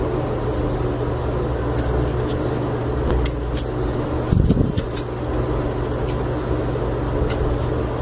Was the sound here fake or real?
real